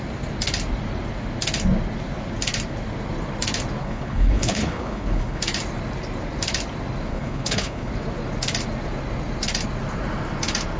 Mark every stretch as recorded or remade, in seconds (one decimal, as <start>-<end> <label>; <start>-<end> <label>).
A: 0.0-3.8 recorded; 3.8-5.4 remade; 5.4-7.1 recorded; 7.1-7.9 remade; 7.9-10.8 recorded